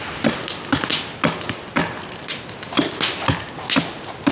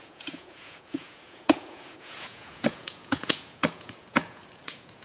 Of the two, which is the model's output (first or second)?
second